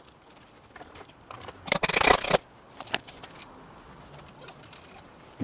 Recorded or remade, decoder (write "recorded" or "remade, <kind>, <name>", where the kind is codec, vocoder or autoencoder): remade, vocoder, BigVGAN v2